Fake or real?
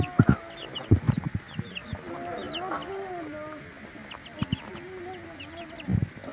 real